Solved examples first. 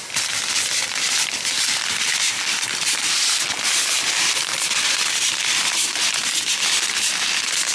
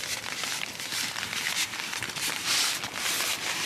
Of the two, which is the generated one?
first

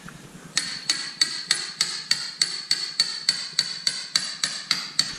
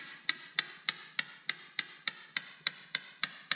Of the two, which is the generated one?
first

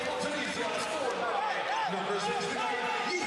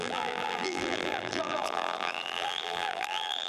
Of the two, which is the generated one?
second